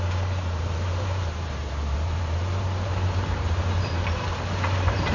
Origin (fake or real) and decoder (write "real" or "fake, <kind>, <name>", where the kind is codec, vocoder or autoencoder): fake, vocoder, BigVGAN v2